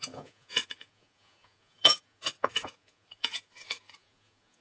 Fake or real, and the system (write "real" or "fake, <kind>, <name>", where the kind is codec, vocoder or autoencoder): fake, vocoder, Vocos